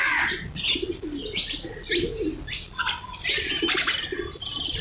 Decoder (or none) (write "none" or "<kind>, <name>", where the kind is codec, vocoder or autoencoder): none